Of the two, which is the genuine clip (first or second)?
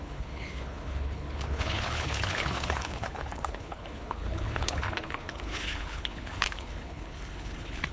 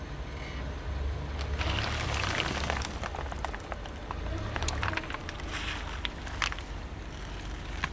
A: second